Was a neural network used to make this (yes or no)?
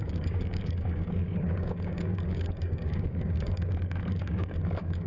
yes